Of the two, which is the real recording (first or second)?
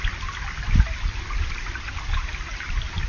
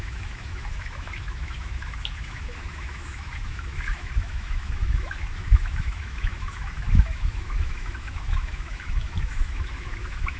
first